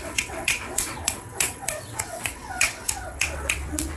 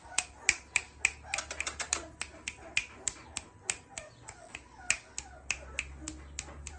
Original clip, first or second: second